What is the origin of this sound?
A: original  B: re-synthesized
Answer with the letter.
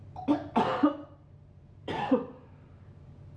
A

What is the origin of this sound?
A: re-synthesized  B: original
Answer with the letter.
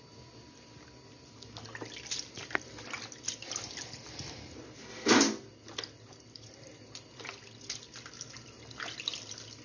B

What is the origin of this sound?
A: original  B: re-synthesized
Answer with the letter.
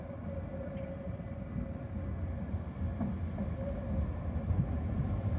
A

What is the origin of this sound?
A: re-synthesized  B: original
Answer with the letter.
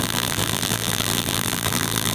A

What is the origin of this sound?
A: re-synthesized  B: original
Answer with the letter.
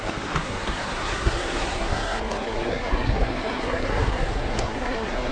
A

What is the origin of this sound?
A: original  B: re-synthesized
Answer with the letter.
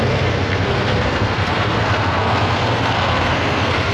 B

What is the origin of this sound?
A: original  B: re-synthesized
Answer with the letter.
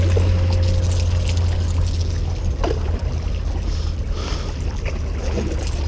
A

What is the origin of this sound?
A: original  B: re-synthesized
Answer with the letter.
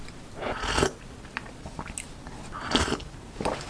A